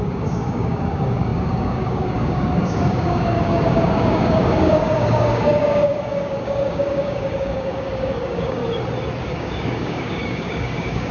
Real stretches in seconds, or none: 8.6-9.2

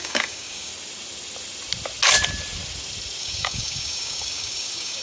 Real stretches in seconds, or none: 0.7-3.2